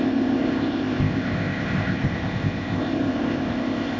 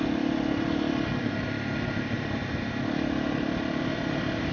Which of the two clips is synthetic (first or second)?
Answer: first